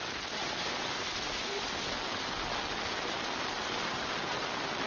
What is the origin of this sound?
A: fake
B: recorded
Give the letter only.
B